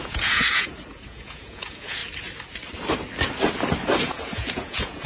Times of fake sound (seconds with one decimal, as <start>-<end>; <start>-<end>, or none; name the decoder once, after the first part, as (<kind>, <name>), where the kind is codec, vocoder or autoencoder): 0.0-2.0 (vocoder, Vocos); 4.0-5.1